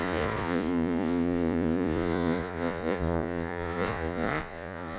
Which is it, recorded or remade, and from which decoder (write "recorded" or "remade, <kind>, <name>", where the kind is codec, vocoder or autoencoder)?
remade, vocoder, Vocos